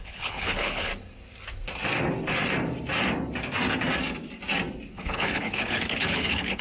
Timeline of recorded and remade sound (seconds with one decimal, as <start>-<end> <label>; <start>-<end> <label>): 0.0-0.9 remade; 0.9-4.9 recorded; 4.9-6.6 remade